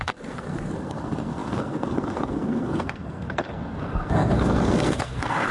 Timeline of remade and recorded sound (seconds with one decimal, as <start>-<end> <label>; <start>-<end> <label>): 0.0-5.5 remade